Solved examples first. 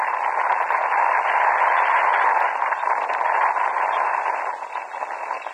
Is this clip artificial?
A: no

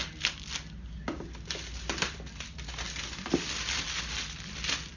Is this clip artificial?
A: no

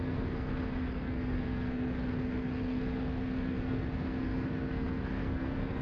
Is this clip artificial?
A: yes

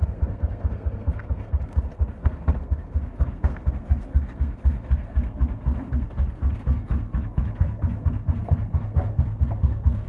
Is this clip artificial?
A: yes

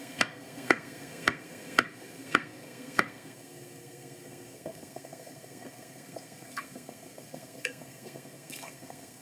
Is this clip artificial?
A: yes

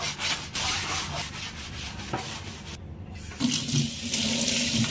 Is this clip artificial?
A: no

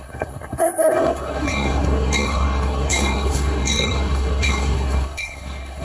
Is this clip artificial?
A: yes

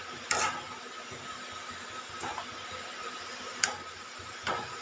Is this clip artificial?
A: no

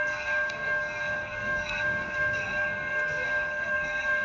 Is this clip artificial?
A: yes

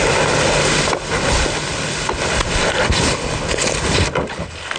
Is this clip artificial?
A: no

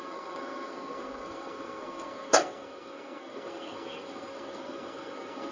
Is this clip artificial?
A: yes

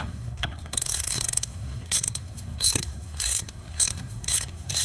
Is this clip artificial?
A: yes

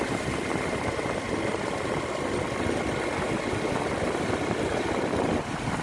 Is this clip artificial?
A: no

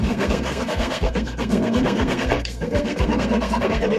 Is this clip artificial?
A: yes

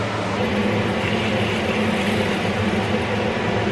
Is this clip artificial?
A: no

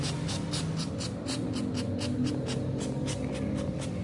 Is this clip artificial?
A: no